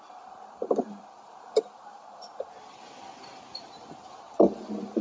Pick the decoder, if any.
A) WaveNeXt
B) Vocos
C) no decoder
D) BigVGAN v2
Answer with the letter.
D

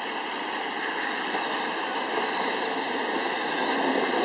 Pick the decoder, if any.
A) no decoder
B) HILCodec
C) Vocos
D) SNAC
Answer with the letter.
A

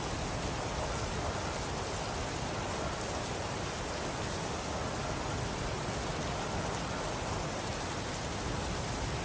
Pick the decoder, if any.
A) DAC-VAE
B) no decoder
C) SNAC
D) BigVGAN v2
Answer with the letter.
B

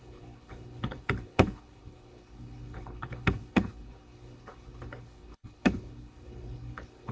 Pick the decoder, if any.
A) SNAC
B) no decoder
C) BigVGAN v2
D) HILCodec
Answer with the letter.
D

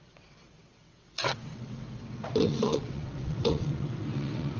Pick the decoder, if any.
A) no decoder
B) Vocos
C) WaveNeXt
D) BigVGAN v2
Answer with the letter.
C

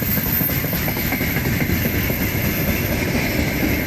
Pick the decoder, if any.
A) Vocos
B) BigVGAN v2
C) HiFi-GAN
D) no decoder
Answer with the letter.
D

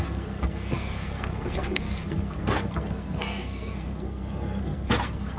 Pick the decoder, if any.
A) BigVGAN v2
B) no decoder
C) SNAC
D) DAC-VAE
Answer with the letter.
C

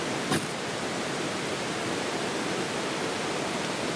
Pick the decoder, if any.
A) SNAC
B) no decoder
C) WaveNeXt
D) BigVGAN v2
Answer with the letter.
B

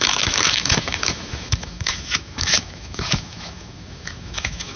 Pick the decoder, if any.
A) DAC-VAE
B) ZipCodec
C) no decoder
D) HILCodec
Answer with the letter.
A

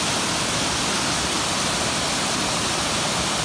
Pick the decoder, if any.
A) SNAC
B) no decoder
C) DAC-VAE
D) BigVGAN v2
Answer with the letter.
B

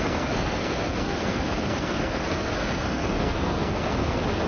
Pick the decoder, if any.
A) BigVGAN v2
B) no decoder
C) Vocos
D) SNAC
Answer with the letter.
D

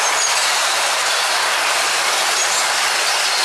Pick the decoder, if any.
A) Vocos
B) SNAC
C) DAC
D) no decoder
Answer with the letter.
D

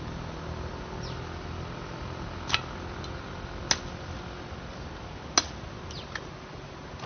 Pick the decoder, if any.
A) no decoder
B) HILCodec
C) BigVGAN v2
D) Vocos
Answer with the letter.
A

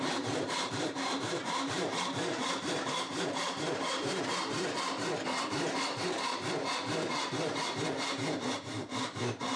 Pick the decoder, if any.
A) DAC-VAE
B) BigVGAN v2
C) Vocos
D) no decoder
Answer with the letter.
B